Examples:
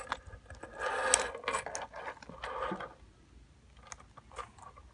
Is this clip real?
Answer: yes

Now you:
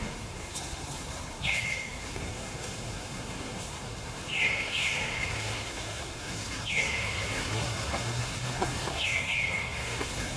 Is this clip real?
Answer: no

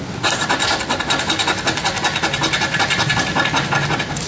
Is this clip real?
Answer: yes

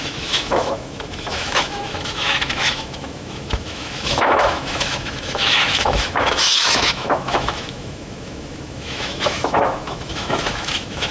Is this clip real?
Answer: no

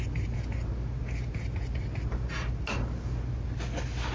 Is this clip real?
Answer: yes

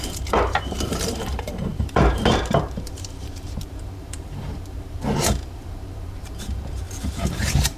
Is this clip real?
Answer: no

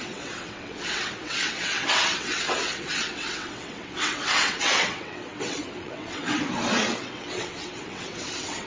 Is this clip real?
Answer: no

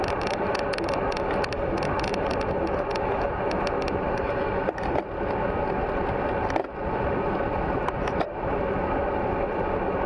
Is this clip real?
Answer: yes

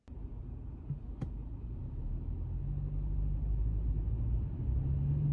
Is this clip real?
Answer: yes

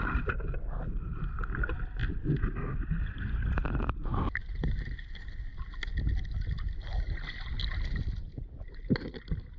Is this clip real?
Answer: yes